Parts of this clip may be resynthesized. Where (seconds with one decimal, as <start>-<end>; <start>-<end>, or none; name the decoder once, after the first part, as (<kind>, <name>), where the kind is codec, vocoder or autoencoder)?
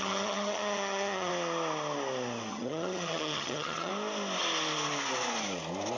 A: 0.0-1.3 (vocoder, HiFi-GAN); 2.5-3.9